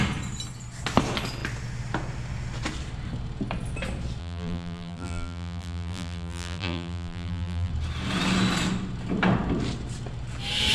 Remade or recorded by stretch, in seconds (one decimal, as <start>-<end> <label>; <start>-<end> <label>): 0.0-4.2 recorded; 4.2-7.7 remade; 7.7-10.7 recorded